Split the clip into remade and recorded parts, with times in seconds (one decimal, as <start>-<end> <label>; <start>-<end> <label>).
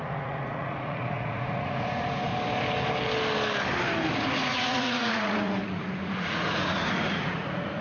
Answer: 0.0-2.3 remade; 2.3-4.1 recorded; 4.1-7.8 remade